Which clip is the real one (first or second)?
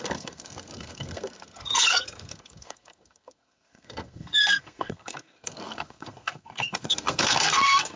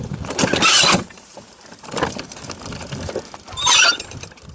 second